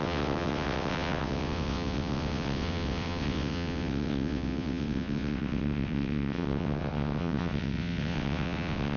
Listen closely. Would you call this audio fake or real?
fake